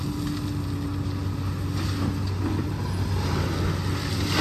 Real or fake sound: real